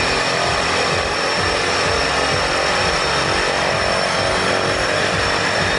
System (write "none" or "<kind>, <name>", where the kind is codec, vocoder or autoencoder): none